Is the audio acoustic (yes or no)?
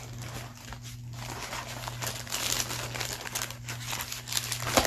yes